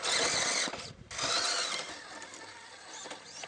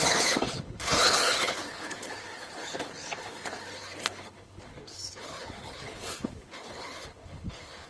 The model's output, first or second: second